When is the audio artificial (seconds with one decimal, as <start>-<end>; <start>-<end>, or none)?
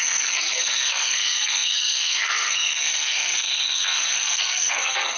0.0-5.2